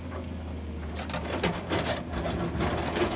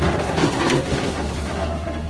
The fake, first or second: second